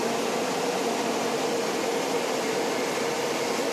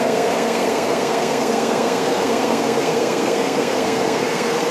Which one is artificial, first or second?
second